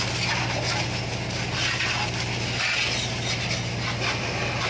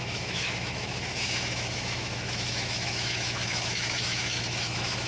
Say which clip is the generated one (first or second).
second